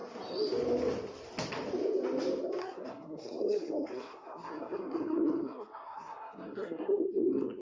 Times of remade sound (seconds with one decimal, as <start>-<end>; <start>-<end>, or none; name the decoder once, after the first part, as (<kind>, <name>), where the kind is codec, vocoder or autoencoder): 2.6-7.6 (codec, SNAC)